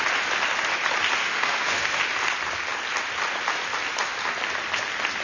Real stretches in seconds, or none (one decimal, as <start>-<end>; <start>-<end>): 0.0-1.2; 2.0-5.2